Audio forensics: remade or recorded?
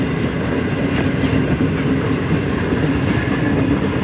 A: recorded